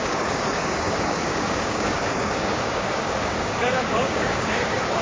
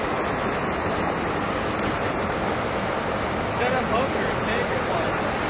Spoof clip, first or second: first